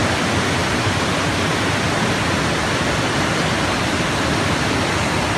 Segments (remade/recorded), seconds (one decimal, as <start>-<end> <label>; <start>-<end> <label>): 0.0-5.4 recorded